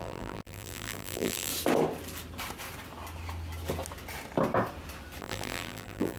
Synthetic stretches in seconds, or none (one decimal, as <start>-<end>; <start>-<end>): 0.0-1.5; 5.2-6.2